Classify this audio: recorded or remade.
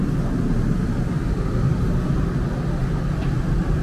recorded